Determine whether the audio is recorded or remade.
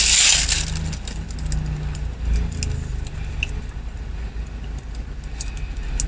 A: recorded